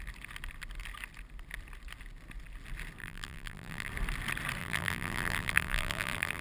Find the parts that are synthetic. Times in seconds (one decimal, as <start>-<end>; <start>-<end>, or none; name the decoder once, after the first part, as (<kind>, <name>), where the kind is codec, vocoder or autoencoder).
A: 3.0-3.9 (vocoder, BigVGAN v2); 4.6-6.4